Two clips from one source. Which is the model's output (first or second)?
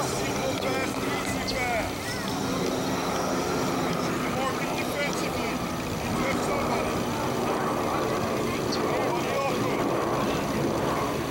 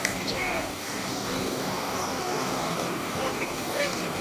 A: second